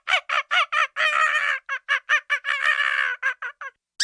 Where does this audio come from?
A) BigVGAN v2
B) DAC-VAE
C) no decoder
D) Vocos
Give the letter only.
C